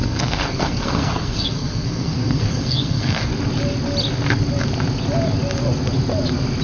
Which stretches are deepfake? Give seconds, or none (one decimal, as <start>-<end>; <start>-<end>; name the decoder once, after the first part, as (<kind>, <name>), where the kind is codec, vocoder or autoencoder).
0.0-3.3 (codec, SNAC)